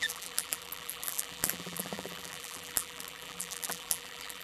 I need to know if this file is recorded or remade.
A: remade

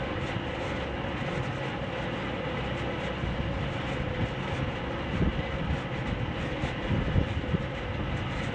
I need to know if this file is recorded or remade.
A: recorded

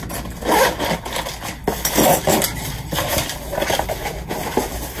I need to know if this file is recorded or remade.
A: recorded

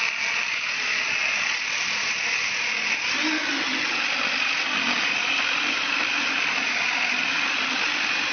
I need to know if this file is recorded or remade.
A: recorded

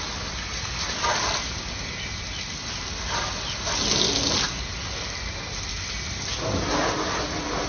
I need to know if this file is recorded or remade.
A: recorded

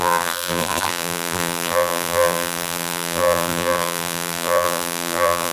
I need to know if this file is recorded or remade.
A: remade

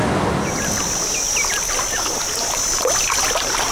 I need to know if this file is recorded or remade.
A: recorded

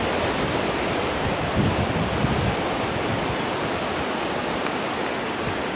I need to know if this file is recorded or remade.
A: recorded